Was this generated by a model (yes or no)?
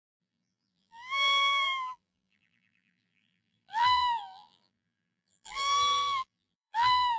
yes